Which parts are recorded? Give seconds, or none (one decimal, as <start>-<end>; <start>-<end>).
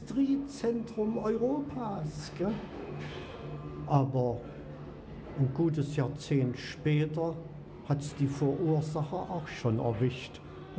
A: 2.4-10.8